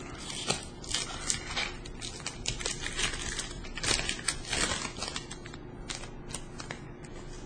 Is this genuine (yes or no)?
yes